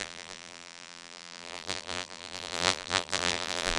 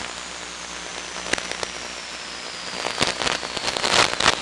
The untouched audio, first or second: second